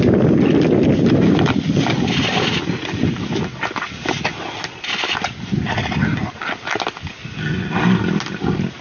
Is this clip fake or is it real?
real